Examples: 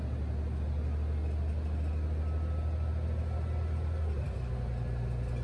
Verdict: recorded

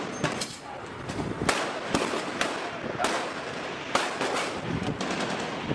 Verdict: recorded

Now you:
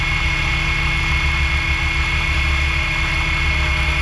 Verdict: recorded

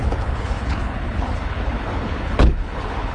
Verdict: remade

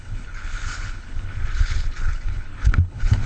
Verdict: remade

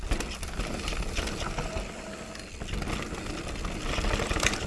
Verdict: recorded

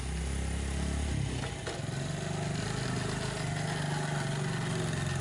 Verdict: recorded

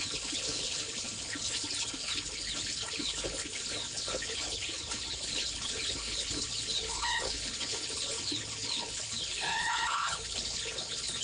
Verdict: remade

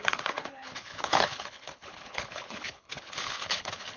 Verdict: remade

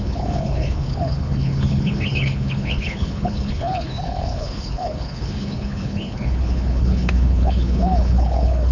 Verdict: remade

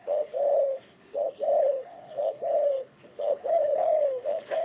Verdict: remade